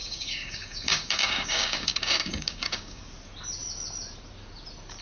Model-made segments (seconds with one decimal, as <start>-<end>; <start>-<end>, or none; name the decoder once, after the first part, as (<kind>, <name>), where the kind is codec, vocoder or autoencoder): 0.0-3.0 (codec, DAC)